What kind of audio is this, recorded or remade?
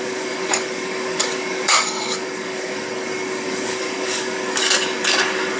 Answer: remade